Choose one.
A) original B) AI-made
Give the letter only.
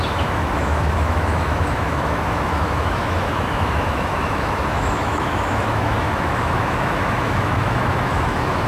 B